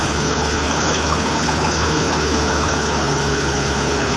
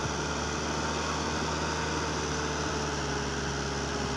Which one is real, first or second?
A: second